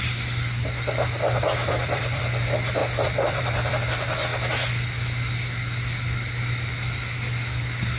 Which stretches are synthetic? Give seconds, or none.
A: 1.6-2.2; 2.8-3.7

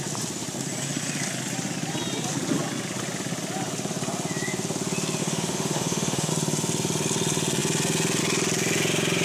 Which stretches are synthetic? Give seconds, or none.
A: 5.2-6.3